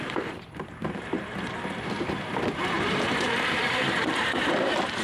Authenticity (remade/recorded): remade